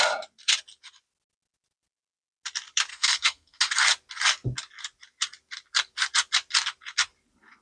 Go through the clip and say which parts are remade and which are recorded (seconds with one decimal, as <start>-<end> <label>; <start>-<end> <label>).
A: 0.0-2.9 recorded; 2.9-3.6 remade; 3.6-7.6 recorded